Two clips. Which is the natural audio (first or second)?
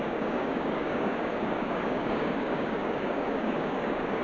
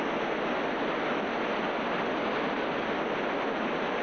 second